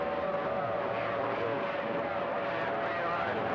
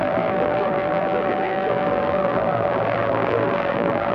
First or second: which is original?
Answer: first